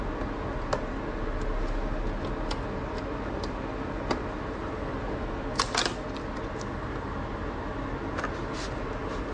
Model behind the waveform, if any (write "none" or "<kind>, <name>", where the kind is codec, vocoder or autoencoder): none